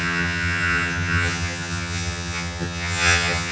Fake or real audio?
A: fake